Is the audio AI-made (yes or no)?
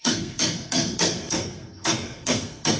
yes